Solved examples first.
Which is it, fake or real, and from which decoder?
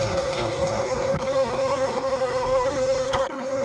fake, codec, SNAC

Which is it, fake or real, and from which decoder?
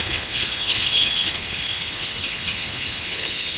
fake, codec, HILCodec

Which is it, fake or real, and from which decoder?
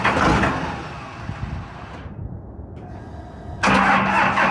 real